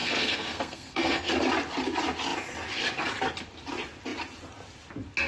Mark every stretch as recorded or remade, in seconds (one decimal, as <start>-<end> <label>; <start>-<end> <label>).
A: 0.0-1.3 remade; 1.3-5.3 recorded

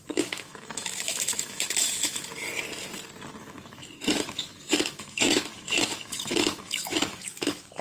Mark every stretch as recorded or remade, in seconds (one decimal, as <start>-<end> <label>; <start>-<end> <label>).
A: 0.0-2.3 remade; 2.3-3.4 recorded; 3.4-7.8 remade

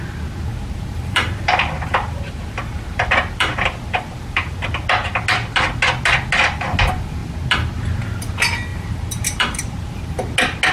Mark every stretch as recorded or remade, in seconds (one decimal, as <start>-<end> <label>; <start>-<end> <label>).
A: 0.0-0.5 recorded; 0.5-4.6 remade; 4.6-8.7 recorded; 8.7-10.1 remade; 10.1-10.7 recorded

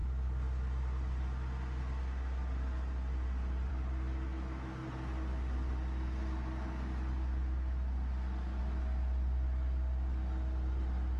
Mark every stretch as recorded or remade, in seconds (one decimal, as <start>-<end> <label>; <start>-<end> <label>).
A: 0.0-11.2 recorded